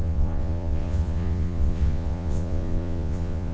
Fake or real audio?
fake